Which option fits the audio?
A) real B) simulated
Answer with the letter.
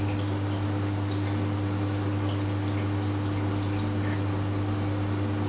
A